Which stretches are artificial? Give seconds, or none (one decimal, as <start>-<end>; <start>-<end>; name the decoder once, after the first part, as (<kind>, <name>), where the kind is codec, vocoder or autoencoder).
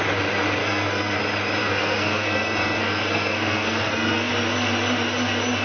0.6-1.2 (codec, SNAC); 1.6-4.3